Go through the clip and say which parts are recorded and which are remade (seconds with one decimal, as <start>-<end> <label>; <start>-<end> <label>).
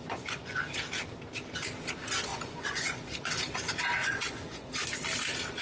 0.0-0.6 remade; 0.6-2.3 recorded; 2.3-3.4 remade; 3.4-4.0 recorded; 4.0-4.7 remade; 4.7-5.6 recorded